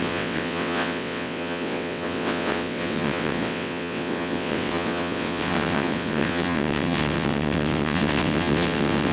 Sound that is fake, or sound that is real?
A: fake